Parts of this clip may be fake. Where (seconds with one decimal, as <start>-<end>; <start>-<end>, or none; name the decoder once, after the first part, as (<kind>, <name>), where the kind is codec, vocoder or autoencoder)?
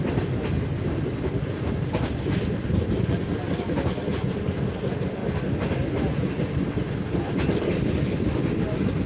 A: none